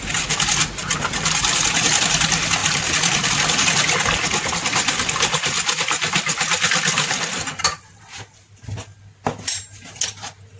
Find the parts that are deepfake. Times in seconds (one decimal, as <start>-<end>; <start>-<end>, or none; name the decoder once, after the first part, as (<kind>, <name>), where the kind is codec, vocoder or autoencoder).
none